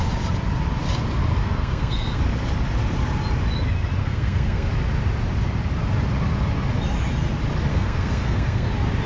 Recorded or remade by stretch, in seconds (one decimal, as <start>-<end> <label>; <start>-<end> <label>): 0.0-1.4 recorded; 1.4-2.2 remade; 2.2-4.0 recorded; 4.0-4.7 remade; 4.7-7.7 recorded; 7.7-8.7 remade; 8.7-9.1 recorded